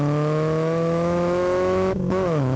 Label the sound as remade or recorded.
remade